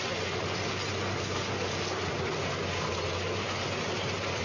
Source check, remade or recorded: recorded